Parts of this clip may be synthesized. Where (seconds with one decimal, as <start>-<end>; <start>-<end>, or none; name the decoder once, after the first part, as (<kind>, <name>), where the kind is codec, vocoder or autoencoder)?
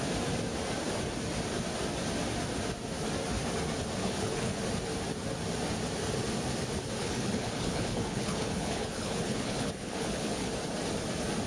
4.0-4.6 (codec, HILCodec); 7.0-10.5